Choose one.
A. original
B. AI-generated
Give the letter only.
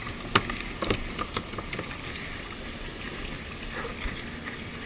A